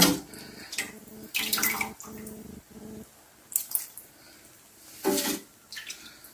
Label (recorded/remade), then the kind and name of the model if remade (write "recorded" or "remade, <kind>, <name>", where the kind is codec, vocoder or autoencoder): recorded